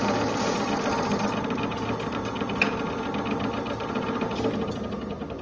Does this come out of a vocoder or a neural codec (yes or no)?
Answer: no